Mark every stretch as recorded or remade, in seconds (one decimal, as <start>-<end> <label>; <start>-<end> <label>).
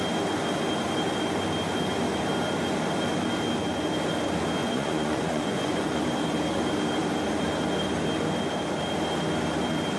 0.0-4.6 recorded; 4.6-6.0 remade; 6.0-10.0 recorded